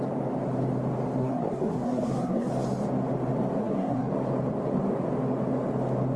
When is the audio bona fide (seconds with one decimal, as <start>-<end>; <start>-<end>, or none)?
0.0-1.2; 2.5-3.6; 4.1-6.2